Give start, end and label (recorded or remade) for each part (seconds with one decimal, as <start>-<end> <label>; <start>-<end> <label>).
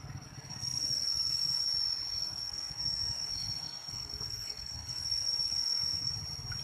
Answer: 0.0-0.5 recorded; 0.5-1.7 remade; 1.7-2.1 recorded; 2.1-6.1 remade; 6.1-6.6 recorded